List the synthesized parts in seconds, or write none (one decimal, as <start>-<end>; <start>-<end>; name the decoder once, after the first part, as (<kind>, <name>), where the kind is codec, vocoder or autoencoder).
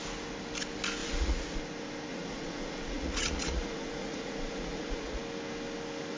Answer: 1.0-1.6 (vocoder, Vocos); 2.1-5.2